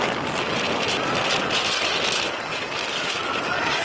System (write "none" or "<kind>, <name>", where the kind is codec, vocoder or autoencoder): none